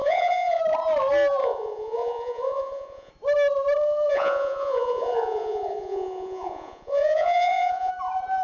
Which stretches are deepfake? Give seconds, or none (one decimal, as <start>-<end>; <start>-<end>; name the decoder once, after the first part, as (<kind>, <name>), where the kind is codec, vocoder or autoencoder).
0.0-0.6 (vocoder, Vocos); 1.4-3.1; 4.1-7.9